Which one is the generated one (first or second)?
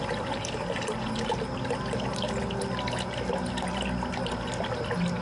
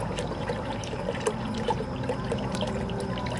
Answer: second